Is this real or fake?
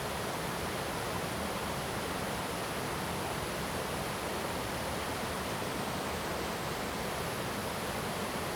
real